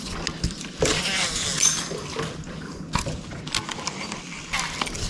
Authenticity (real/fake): real